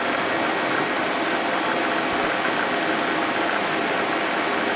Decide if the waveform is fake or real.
real